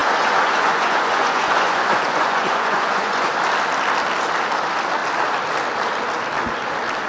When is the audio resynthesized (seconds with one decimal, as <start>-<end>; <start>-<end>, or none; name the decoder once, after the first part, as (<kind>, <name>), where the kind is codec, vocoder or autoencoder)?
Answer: 0.0-3.3 (vocoder, Vocos)